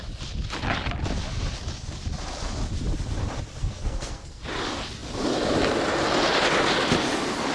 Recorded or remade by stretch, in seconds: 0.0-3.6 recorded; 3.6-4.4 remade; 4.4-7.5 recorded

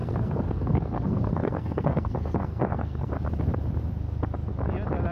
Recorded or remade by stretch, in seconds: 0.0-3.1 remade; 3.1-5.1 recorded

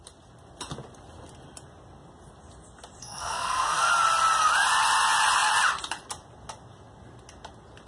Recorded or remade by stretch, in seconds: 0.0-3.0 recorded; 3.0-3.9 remade; 3.9-7.9 recorded